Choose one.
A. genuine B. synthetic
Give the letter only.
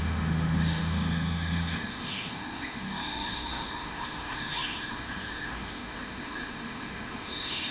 B